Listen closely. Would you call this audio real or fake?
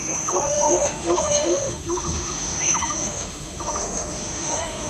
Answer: fake